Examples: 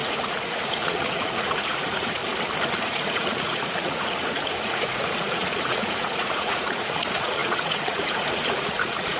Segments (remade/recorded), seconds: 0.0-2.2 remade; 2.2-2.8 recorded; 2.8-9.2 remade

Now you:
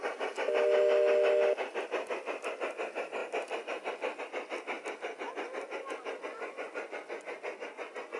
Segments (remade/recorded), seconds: 0.0-6.3 recorded; 6.3-8.2 remade

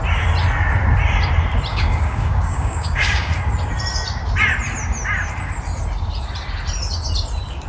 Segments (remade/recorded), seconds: 0.0-1.7 recorded; 1.7-3.3 remade; 3.3-7.7 recorded

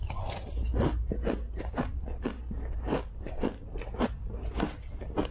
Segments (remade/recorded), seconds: 0.0-5.3 recorded